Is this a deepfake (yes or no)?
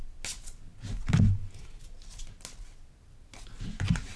no